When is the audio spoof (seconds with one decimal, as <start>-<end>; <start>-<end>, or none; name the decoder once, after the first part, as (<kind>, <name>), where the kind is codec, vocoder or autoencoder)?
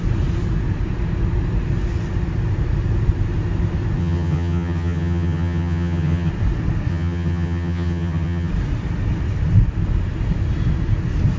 4.0-6.3 (vocoder, HiFi-GAN); 6.9-8.5